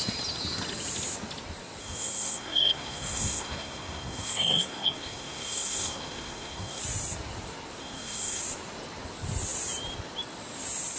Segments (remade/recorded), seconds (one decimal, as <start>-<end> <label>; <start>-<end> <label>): 0.0-1.8 recorded; 1.8-6.8 remade; 6.8-7.8 recorded; 7.8-8.4 remade; 8.4-11.0 recorded